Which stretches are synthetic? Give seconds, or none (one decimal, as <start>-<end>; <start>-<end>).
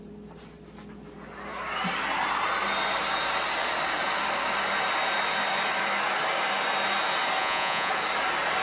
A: 7.4-7.9